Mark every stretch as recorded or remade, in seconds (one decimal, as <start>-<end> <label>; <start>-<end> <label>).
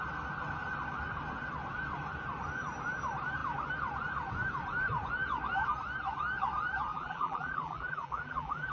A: 0.0-6.9 recorded; 6.9-8.7 remade